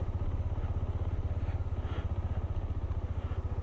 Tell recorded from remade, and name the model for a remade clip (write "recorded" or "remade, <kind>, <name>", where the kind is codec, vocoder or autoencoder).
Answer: recorded